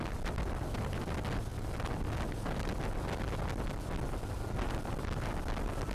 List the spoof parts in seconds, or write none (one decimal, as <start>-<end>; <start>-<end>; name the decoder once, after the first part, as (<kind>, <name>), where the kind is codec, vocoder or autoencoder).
none